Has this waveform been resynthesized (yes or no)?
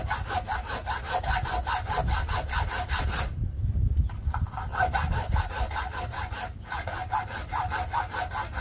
no